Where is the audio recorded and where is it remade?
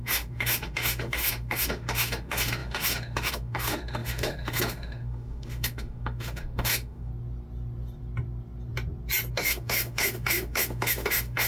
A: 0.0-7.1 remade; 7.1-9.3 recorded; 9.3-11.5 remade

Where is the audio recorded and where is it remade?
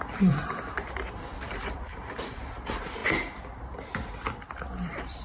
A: 0.0-3.0 remade; 3.0-3.6 recorded; 3.6-5.2 remade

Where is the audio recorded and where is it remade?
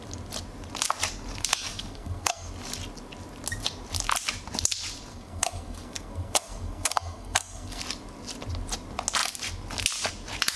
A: 0.0-1.4 recorded; 1.4-2.5 remade; 2.5-5.1 recorded; 5.1-7.8 remade; 7.8-10.6 recorded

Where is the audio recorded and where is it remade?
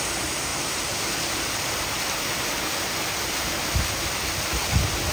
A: 0.0-5.1 recorded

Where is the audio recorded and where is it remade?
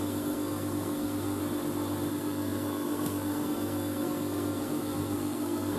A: 0.0-1.4 remade; 1.4-2.1 recorded; 2.1-5.8 remade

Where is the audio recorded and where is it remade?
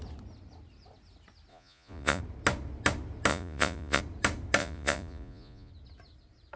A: 0.0-1.5 recorded; 1.5-2.2 remade; 2.2-3.3 recorded; 3.3-4.0 remade; 4.0-4.6 recorded; 4.6-5.7 remade; 5.7-6.6 recorded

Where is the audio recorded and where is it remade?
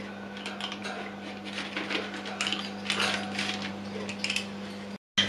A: 0.0-5.3 recorded